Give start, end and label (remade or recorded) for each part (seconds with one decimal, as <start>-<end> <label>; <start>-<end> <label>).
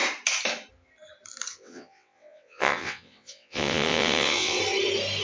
0.0-1.5 recorded; 1.5-4.6 remade; 4.6-5.2 recorded